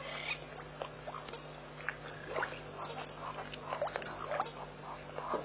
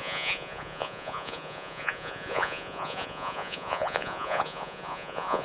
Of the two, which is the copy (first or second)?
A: second